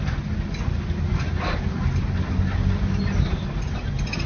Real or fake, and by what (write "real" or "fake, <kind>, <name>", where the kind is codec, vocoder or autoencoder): real